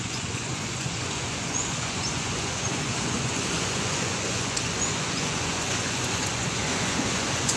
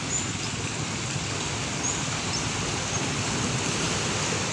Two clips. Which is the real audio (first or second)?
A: second